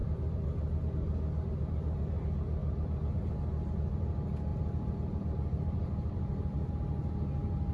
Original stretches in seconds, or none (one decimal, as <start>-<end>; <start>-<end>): 0.8-2.6; 3.1-4.5; 6.7-7.7